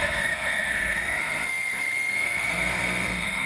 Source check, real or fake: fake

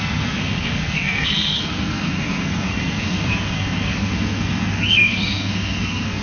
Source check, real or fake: fake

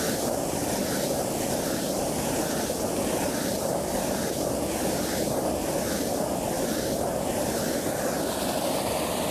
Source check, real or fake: real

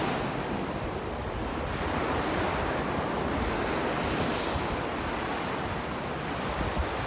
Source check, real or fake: real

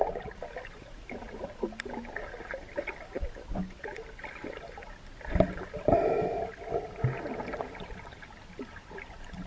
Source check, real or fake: real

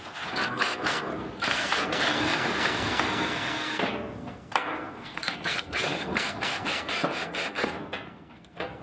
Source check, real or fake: fake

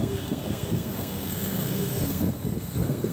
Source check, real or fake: fake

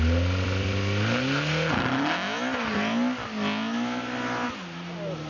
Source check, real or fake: real